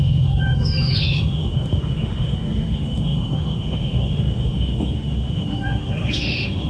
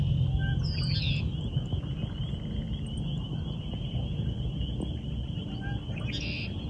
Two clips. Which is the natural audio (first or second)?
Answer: second